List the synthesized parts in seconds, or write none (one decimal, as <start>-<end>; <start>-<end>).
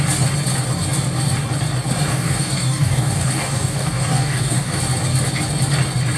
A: 2.1-4.8